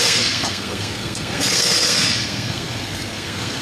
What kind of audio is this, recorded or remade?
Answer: remade